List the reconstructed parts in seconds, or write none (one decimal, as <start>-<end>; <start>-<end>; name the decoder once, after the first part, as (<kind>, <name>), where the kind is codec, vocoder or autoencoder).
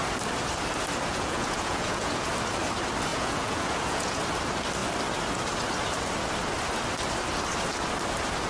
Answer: 1.1-2.3 (vocoder, Vocos); 3.1-4.2